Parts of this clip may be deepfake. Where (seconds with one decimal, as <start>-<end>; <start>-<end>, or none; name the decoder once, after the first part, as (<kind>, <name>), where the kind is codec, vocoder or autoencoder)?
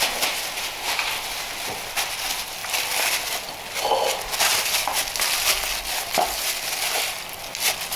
none